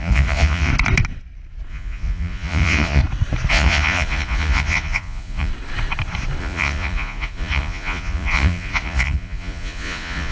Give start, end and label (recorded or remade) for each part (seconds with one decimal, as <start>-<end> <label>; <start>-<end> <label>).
0.0-0.7 remade; 0.7-1.7 recorded; 1.7-3.0 remade; 3.0-3.5 recorded; 3.5-5.5 remade; 5.5-6.4 recorded; 6.4-10.3 remade